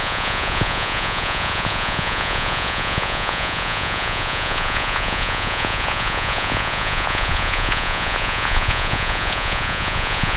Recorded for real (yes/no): no